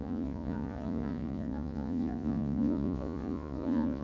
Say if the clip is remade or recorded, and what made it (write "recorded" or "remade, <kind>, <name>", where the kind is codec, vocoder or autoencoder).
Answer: remade, vocoder, Vocos